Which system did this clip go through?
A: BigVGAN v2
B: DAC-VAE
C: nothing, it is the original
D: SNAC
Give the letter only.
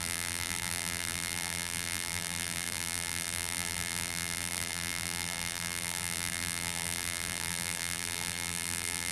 A